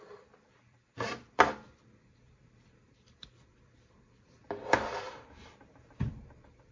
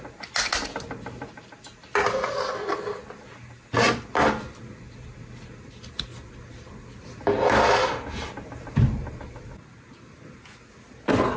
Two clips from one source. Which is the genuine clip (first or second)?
second